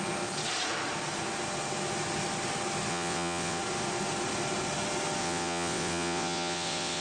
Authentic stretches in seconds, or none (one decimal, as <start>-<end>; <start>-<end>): 0.0-2.9; 3.6-5.2